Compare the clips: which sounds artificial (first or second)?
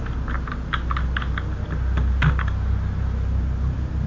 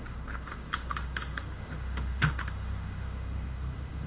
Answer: second